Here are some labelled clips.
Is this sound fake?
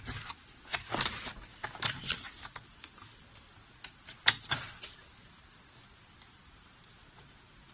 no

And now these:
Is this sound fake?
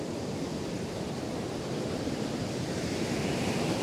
no